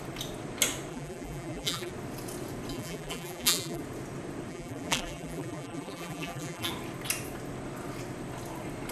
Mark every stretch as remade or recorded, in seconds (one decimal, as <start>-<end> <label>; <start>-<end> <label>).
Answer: 0.0-0.9 recorded; 0.9-1.9 remade; 1.9-2.7 recorded; 2.7-3.8 remade; 3.8-4.5 recorded; 4.5-6.7 remade; 6.7-8.9 recorded